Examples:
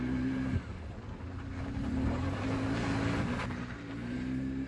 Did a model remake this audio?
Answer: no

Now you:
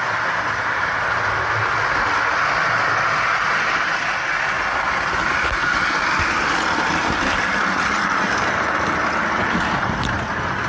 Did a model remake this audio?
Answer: no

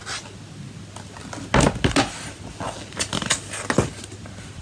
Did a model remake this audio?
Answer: no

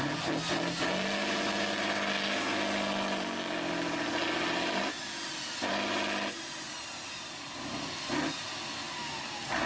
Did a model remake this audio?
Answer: no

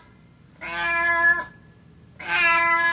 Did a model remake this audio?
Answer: no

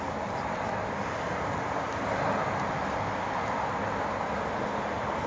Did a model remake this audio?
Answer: no